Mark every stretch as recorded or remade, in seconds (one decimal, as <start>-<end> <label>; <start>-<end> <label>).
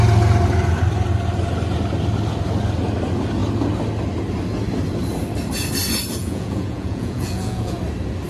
0.0-6.2 recorded; 6.2-7.8 remade; 7.8-8.3 recorded